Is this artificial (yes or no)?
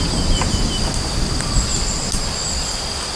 no